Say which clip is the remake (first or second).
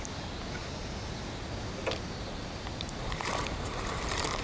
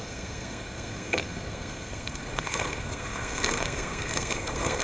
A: second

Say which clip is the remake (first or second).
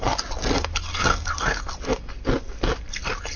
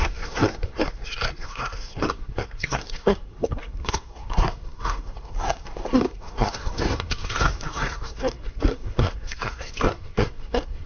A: second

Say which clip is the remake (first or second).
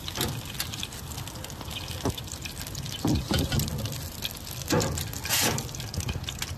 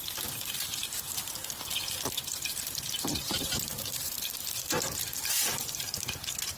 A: second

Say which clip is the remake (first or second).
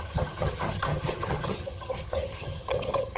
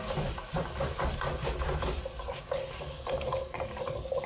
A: first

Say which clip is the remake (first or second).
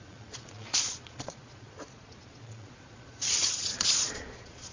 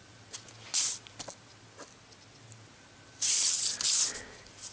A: first